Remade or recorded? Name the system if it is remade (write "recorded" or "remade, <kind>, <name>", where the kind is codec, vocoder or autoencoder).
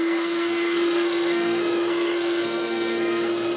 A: remade, codec, SNAC